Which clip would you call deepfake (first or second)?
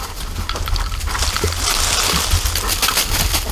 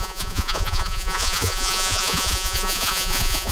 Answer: second